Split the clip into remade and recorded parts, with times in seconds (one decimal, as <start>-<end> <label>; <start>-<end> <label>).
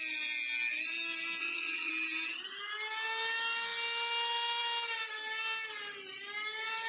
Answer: 0.0-1.4 recorded; 1.4-1.9 remade; 1.9-6.9 recorded